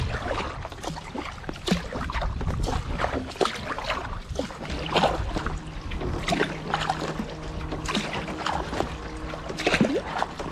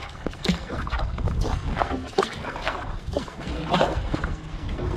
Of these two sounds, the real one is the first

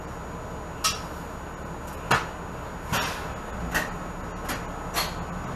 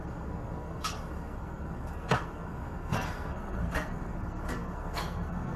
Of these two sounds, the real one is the first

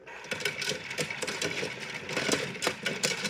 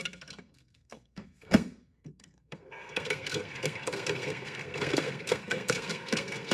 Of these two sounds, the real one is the first